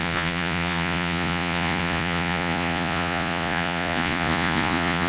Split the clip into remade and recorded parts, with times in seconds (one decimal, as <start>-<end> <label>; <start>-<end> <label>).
0.0-5.1 remade